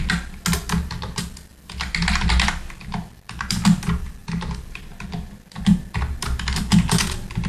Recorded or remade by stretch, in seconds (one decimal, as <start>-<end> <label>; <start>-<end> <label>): 0.0-7.5 recorded